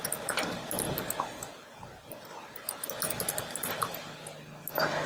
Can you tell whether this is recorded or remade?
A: recorded